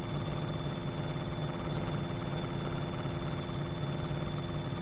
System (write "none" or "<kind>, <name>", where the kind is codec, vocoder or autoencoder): vocoder, HiFi-GAN